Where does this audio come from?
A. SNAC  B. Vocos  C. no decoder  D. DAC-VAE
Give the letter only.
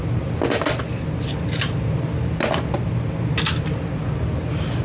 C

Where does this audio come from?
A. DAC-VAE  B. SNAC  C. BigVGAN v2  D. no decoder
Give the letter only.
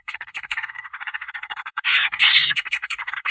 B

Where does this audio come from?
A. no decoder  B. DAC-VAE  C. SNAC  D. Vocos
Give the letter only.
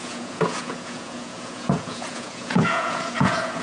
D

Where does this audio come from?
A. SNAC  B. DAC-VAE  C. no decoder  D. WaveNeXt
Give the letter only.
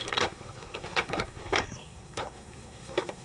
A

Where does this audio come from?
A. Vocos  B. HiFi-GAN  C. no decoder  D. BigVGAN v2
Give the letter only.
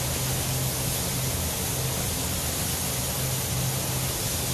C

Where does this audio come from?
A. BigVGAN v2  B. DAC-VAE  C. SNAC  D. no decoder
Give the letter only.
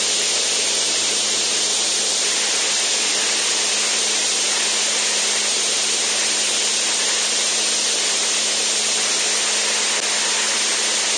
D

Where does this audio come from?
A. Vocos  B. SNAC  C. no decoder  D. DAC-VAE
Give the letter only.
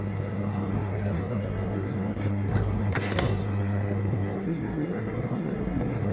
B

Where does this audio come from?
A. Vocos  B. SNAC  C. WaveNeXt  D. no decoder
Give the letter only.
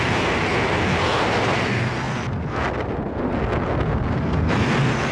D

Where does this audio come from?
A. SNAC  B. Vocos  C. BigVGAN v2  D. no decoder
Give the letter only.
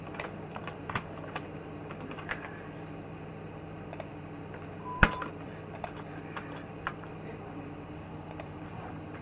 C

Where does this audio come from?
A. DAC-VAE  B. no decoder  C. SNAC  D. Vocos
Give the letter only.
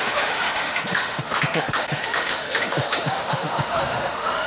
A